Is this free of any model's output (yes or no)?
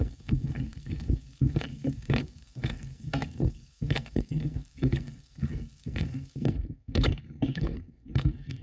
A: no